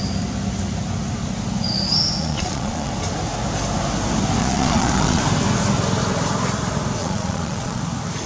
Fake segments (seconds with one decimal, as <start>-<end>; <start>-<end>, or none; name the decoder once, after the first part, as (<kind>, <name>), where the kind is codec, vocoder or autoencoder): 2.2-2.9 (vocoder, Vocos); 4.4-5.2; 7.0-7.8

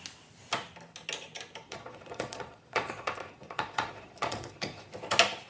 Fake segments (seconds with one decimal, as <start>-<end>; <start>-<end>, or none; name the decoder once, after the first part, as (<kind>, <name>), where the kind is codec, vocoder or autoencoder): 1.6-4.9 (vocoder, Vocos)

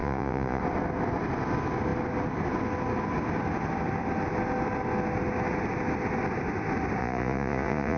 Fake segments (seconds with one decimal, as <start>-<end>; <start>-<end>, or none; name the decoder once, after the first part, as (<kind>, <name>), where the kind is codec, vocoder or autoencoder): 0.0-0.6 (vocoder, Vocos); 7.0-8.0

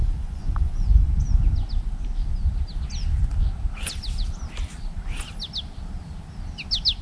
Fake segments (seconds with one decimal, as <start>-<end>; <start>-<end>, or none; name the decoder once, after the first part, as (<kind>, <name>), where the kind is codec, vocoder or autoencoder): 0.0-1.1 (vocoder, Vocos)

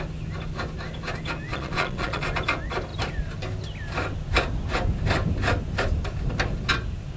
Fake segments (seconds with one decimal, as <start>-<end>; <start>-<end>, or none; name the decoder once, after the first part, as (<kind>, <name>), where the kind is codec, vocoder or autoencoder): 1.5-2.2 (vocoder, Vocos)